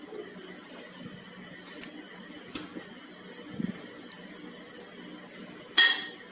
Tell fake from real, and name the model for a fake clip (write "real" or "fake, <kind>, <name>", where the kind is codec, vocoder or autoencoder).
real